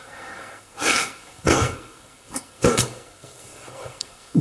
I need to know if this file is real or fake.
fake